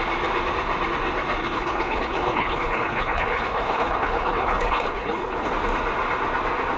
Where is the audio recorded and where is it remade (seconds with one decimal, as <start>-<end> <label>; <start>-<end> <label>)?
0.0-1.4 recorded; 1.4-5.5 remade; 5.5-6.8 recorded